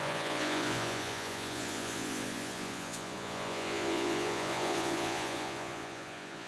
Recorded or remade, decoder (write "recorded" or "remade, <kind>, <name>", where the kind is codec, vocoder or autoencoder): remade, vocoder, Vocos